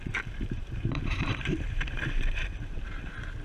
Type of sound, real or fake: fake